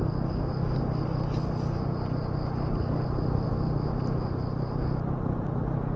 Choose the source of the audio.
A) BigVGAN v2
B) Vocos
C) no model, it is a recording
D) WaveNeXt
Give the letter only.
C